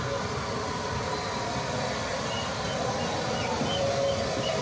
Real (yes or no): yes